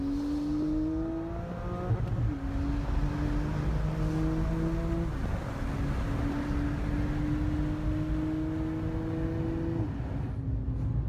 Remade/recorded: recorded